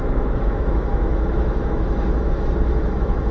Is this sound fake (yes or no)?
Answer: yes